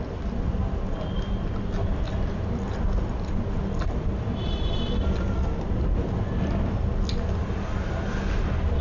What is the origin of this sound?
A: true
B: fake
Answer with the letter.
A